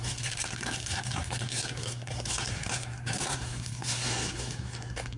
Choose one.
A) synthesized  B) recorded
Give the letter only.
A